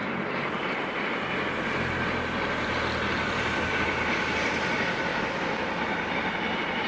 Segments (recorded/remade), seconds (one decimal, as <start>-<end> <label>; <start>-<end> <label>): 0.0-6.9 recorded